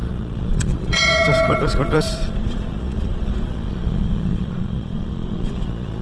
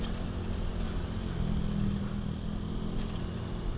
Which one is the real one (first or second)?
second